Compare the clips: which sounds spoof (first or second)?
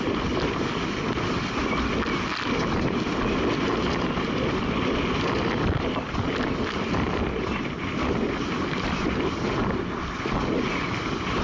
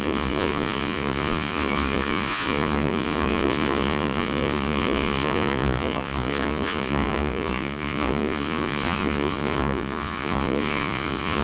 second